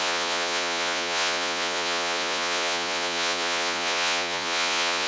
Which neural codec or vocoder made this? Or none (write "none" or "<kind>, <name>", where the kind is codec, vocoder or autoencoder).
vocoder, Vocos